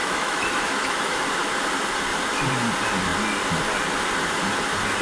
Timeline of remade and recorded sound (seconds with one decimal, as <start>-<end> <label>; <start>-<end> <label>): 0.0-1.2 remade; 1.2-5.0 recorded